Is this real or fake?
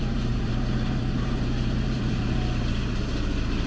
fake